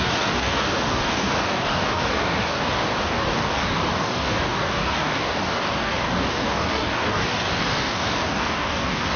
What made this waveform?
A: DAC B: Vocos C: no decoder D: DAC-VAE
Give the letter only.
A